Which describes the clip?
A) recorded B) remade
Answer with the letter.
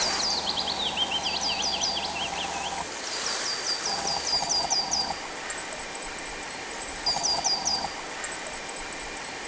A